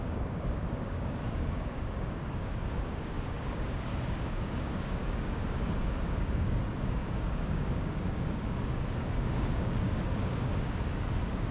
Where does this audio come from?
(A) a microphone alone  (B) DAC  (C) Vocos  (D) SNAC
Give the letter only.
B